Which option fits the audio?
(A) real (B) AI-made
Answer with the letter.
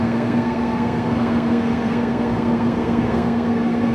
B